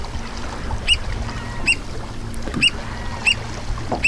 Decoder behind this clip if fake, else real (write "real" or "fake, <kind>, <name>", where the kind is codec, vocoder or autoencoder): real